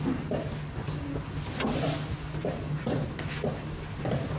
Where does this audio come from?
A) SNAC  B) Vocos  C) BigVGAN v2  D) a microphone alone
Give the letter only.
D